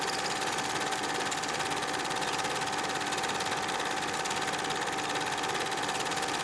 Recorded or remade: recorded